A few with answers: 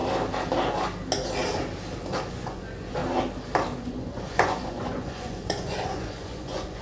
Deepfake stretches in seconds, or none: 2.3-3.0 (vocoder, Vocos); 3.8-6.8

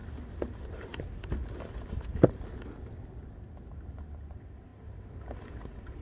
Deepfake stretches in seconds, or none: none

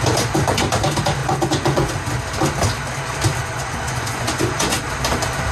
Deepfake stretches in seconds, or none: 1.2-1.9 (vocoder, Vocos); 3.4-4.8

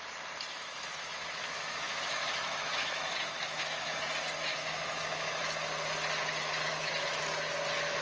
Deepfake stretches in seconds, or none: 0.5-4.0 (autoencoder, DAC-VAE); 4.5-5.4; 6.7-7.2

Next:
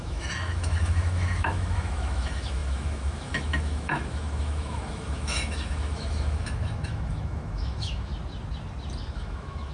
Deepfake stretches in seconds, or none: 0.0-8.1 (autoencoder, DAC-VAE); 9.1-9.7

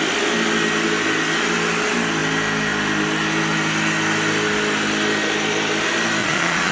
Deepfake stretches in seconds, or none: 6.2-6.7 (vocoder, Vocos)